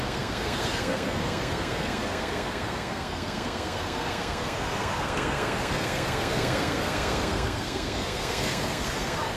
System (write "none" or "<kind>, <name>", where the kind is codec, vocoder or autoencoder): codec, SNAC